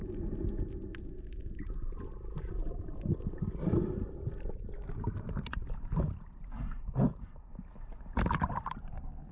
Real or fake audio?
real